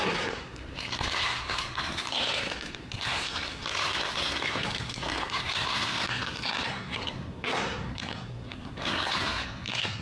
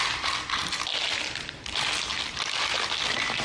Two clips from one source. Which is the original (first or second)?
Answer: second